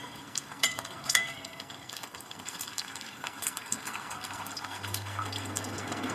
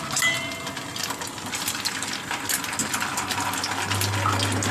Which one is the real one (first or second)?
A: second